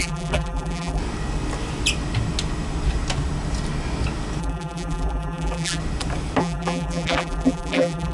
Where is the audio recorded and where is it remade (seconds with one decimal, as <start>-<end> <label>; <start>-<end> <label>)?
0.0-1.0 remade; 1.0-4.4 recorded; 4.4-5.8 remade; 5.8-6.4 recorded; 6.4-8.1 remade